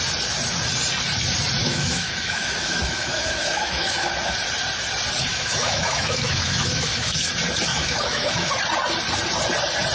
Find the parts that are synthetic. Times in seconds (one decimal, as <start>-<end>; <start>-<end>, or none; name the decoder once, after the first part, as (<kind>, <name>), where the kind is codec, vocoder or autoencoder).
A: 1.6-4.1 (autoencoder, DAC-VAE); 5.3-7.3; 7.7-8.5

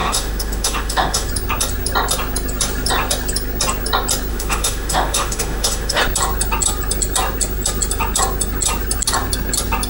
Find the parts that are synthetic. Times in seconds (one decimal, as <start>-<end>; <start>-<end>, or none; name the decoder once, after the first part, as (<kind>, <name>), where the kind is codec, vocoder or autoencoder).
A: 0.0-1.3 (autoencoder, DAC-VAE); 4.3-6.0

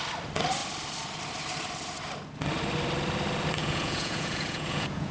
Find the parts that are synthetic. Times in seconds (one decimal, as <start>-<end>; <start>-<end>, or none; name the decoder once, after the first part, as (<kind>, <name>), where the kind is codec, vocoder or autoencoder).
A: 3.6-5.1 (vocoder, Vocos)

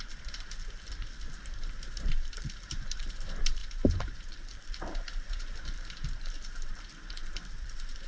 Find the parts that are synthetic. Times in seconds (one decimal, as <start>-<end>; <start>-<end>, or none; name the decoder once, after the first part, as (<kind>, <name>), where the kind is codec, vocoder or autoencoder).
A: 0.0-8.1 (vocoder, BigVGAN v2)

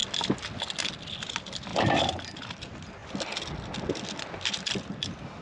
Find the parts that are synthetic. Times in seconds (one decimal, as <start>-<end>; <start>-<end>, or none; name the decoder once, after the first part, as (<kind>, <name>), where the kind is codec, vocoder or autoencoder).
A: none

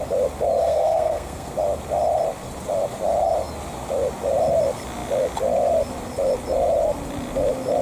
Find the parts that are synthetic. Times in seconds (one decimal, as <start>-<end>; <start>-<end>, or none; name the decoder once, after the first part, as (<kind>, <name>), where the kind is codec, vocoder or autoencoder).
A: 0.6-1.5 (codec, SNAC)

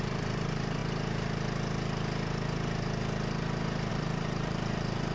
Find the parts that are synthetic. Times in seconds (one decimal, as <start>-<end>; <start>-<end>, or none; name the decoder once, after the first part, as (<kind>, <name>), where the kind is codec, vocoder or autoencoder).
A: 0.0-0.8 (vocoder, BigVGAN v2); 3.9-5.1

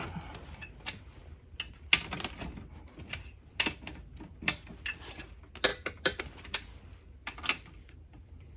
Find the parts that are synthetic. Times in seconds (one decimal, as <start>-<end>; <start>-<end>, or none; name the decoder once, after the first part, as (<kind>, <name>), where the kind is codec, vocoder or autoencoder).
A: 5.7-6.2 (vocoder, BigVGAN v2)